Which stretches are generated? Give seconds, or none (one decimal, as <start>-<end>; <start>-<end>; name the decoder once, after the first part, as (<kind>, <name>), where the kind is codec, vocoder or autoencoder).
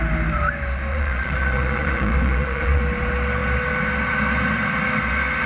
0.9-2.8 (vocoder, Vocos)